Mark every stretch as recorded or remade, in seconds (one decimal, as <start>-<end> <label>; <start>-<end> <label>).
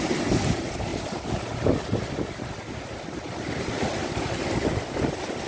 0.0-5.5 recorded